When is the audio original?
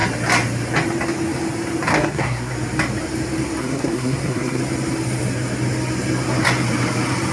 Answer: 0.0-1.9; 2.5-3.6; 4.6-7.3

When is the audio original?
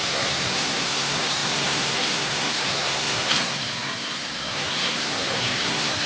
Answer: none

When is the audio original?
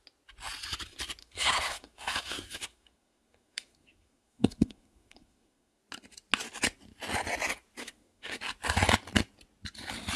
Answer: 0.0-1.2; 5.8-7.8; 8.4-10.2